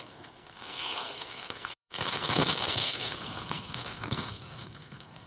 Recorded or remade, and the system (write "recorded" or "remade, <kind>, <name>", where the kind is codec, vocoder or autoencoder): remade, codec, SNAC